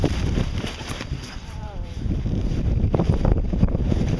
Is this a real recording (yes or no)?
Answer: no